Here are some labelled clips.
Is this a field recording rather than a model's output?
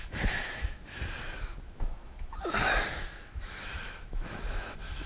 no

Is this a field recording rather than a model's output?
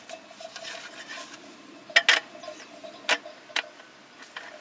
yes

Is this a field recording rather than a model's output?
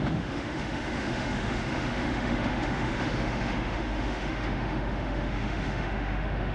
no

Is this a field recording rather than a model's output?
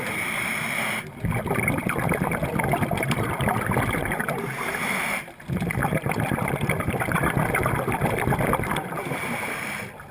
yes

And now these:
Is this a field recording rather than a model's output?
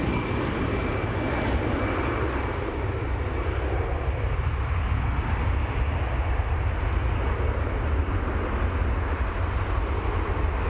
yes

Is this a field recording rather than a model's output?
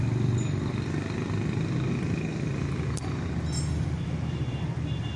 yes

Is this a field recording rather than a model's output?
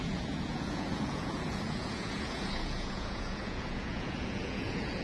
no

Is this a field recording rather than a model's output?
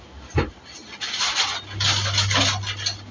yes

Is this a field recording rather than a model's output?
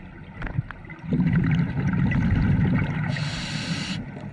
yes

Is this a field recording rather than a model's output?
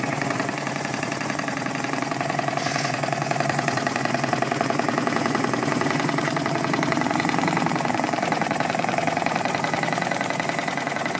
no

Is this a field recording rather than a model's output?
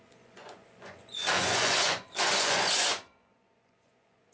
no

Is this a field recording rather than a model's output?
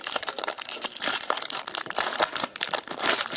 no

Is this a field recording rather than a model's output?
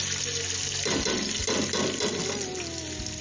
yes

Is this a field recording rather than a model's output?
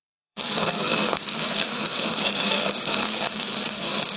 no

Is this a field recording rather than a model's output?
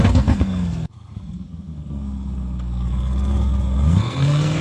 no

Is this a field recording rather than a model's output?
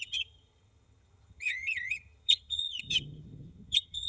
no